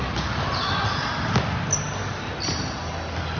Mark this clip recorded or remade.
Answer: recorded